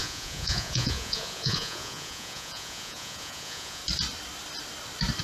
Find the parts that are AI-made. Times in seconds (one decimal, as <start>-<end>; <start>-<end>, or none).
0.0-3.8

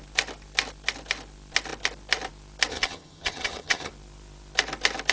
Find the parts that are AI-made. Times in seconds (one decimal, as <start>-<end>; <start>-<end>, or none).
2.7-3.9

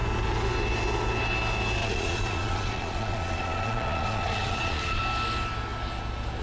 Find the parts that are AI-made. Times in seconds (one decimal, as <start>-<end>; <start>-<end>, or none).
1.8-5.0

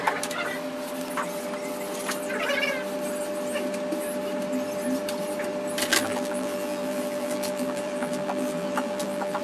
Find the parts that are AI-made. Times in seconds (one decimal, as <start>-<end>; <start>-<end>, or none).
5.9-9.4

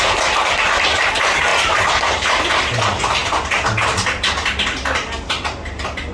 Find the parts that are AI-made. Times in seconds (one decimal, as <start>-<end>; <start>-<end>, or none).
1.5-2.5

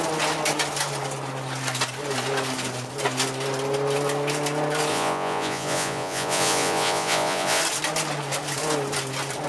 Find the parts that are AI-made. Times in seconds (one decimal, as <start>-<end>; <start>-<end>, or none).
4.9-7.6

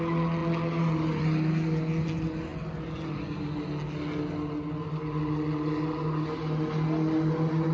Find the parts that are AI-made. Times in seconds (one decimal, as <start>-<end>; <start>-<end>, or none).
none